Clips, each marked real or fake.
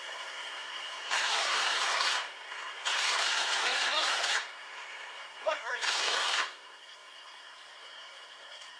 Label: fake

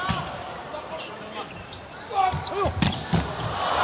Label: real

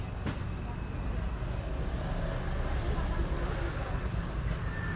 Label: real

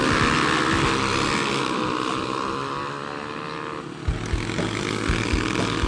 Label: real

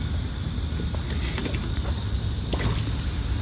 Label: real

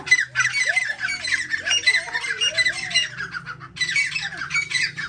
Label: real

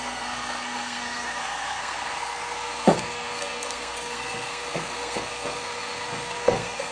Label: fake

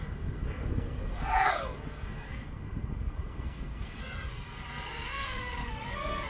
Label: fake